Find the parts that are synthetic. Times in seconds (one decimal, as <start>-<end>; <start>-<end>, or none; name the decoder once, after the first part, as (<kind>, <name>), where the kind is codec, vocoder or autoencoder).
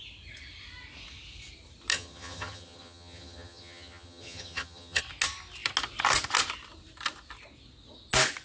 1.9-5.0 (vocoder, HiFi-GAN)